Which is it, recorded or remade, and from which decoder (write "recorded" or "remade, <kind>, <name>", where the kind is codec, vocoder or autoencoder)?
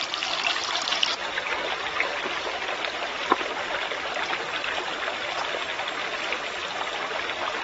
recorded